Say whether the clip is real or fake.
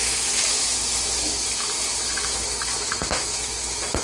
fake